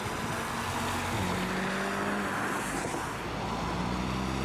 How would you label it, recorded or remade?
recorded